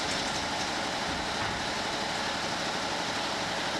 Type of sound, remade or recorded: recorded